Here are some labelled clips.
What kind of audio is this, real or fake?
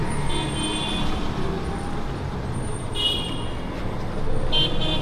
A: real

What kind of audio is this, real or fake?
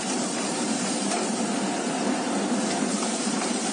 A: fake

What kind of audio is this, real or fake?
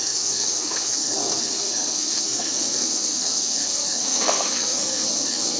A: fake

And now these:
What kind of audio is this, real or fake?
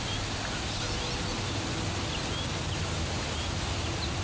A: real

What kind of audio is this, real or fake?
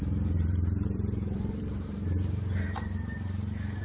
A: fake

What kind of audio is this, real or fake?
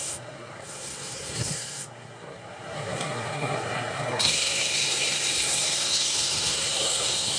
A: fake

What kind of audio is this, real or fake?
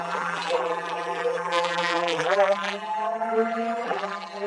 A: fake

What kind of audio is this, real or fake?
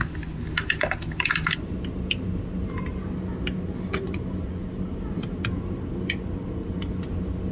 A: real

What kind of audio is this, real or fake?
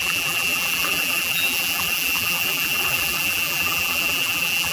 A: fake